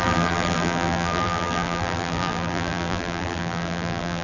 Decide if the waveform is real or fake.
fake